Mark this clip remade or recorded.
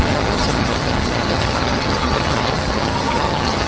remade